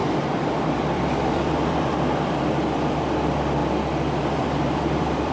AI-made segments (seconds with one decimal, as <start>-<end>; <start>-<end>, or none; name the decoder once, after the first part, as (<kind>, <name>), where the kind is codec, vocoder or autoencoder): 0.0-3.6 (vocoder, BigVGAN v2); 4.2-5.3